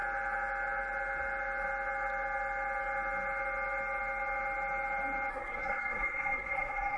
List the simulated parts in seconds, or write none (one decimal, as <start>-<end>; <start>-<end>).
5.3-7.0